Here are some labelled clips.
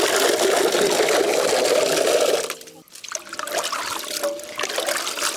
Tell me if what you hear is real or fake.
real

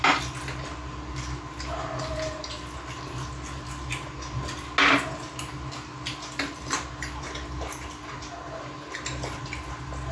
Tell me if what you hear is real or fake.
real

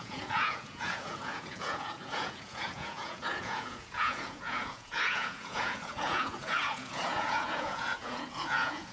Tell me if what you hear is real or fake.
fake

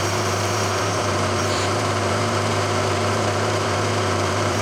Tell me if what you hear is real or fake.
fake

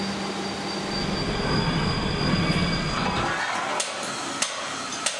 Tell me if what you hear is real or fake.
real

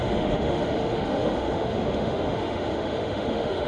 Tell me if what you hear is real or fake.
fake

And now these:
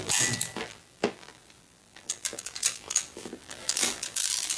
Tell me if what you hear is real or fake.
fake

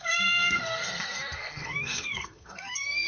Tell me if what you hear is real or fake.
fake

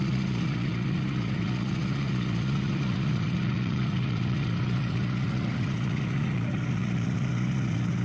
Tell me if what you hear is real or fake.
fake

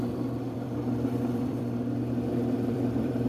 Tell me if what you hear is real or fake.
fake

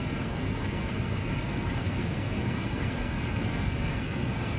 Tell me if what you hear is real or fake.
fake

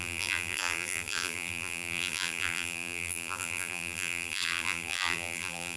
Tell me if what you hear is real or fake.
fake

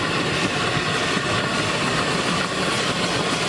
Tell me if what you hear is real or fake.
real